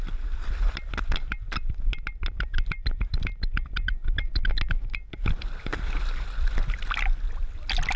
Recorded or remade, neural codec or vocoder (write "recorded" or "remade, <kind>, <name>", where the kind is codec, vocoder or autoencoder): recorded